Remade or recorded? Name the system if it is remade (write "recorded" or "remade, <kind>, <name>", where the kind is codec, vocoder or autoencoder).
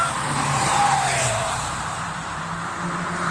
remade, vocoder, BigVGAN v2